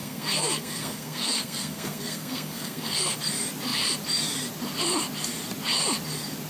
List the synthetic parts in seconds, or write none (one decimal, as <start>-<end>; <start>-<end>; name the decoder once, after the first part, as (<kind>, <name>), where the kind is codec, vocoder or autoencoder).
0.0-3.2 (codec, SNAC)